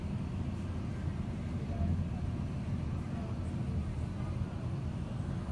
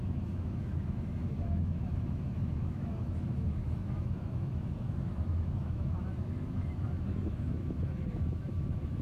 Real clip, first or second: first